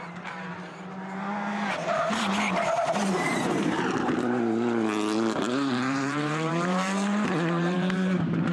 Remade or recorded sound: remade